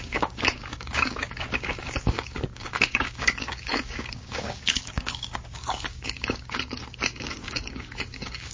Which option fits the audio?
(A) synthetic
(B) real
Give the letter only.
A